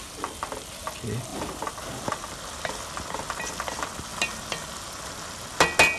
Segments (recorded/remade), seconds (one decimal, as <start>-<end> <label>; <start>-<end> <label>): 0.0-1.3 recorded; 1.3-2.0 remade; 2.0-6.0 recorded